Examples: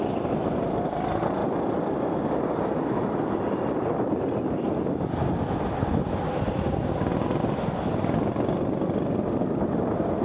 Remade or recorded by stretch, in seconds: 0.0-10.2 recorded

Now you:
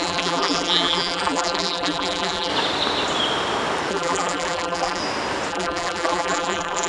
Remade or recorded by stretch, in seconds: 0.0-2.5 remade; 2.5-3.9 recorded; 3.9-5.0 remade; 5.0-5.5 recorded; 5.5-6.9 remade

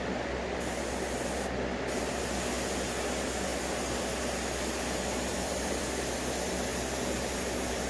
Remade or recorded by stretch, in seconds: 0.0-5.3 recorded; 5.3-5.8 remade; 5.8-7.9 recorded

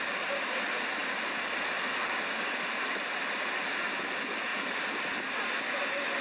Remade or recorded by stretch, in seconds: 0.0-1.0 recorded; 1.0-3.7 remade; 3.7-4.5 recorded; 4.5-5.3 remade; 5.3-6.2 recorded

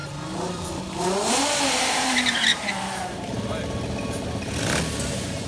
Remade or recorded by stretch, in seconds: 0.0-1.3 recorded; 1.3-3.5 remade; 3.5-5.1 recorded; 5.1-5.5 remade